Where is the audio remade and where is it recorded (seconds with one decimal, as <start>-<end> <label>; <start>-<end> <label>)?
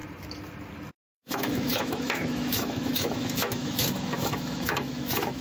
0.0-0.9 recorded; 0.9-5.4 remade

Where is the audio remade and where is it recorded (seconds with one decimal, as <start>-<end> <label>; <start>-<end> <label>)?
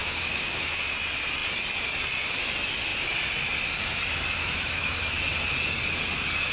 0.0-0.8 remade; 0.8-4.4 recorded; 4.4-5.2 remade; 5.2-6.5 recorded